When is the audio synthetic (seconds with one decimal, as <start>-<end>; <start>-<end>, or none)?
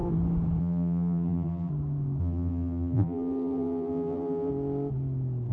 0.6-1.7; 2.2-4.5